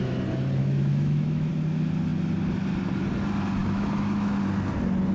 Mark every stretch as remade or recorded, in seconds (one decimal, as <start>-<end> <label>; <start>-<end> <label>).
0.0-0.6 recorded; 0.6-1.5 remade; 1.5-3.6 recorded; 3.6-4.4 remade; 4.4-5.1 recorded

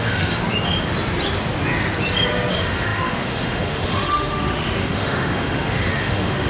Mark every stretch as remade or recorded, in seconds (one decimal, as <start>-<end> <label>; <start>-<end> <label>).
0.0-0.4 remade; 0.4-2.5 recorded; 2.5-6.5 remade

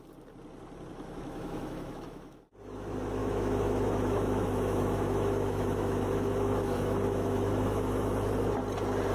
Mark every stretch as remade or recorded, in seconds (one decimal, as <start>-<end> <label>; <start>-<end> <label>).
0.0-0.9 recorded; 0.9-2.4 remade; 2.4-3.2 recorded; 3.2-8.1 remade; 8.1-9.1 recorded

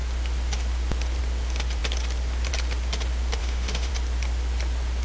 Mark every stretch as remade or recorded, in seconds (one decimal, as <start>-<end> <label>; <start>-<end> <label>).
0.0-3.4 recorded; 3.4-3.9 remade; 3.9-5.0 recorded